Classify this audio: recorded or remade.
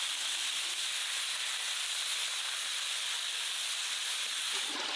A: recorded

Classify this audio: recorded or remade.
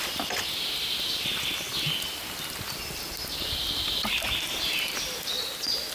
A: recorded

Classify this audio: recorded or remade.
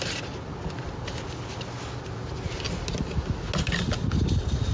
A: recorded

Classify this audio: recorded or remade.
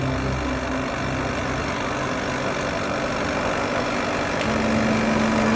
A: recorded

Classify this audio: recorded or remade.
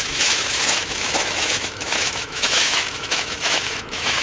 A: remade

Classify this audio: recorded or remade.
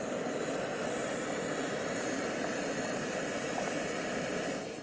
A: recorded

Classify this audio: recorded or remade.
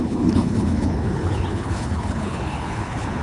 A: remade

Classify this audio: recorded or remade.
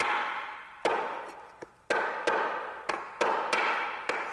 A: recorded